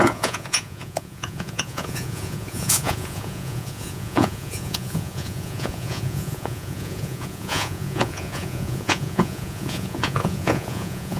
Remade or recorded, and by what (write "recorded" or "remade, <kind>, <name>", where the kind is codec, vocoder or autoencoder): remade, vocoder, Vocos